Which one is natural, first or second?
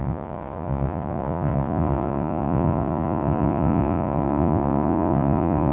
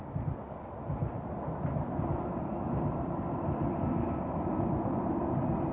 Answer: second